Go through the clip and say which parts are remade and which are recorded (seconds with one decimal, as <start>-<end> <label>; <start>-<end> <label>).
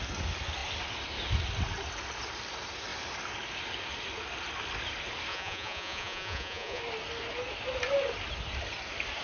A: 0.0-5.3 recorded; 5.3-6.8 remade; 6.8-9.2 recorded